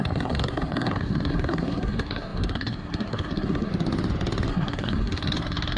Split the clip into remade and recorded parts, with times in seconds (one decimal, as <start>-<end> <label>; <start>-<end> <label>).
0.0-3.7 remade; 3.7-4.5 recorded; 4.5-5.8 remade